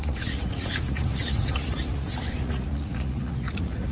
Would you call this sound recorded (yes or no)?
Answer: no